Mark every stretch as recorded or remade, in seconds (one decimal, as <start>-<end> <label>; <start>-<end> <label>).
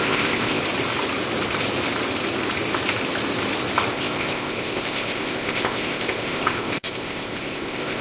0.0-0.6 remade; 0.6-3.9 recorded; 3.9-8.0 remade